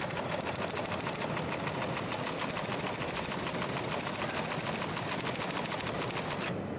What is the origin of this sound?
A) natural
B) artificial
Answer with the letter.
A